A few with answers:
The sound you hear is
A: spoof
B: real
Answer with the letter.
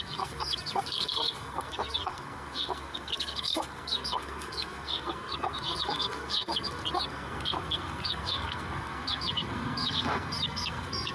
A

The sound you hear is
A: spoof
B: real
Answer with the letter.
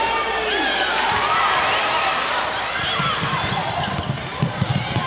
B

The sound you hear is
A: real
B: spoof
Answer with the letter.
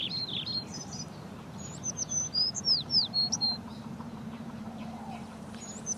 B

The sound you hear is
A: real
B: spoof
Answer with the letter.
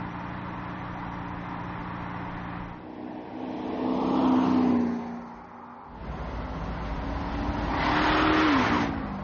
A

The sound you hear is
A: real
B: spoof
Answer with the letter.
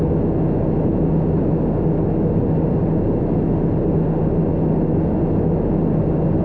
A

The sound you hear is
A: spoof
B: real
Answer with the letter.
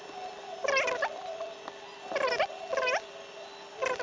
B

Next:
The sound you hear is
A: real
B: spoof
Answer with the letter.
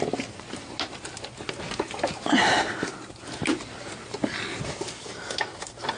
A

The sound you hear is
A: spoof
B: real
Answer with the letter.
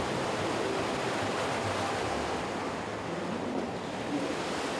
A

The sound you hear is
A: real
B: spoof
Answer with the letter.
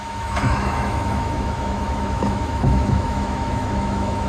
B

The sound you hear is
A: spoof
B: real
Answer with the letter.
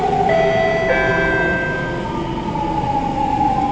B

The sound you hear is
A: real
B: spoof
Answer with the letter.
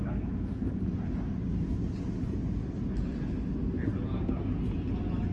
A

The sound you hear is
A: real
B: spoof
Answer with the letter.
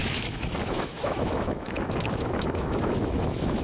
B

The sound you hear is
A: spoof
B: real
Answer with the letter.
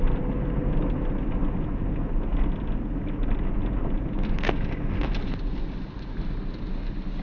B